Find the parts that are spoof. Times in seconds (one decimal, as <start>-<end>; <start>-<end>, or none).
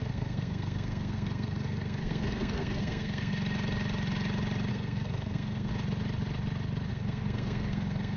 0.0-3.3; 4.7-5.7; 6.9-8.2